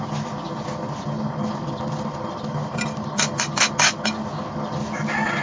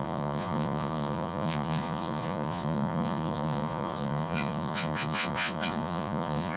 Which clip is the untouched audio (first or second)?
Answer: first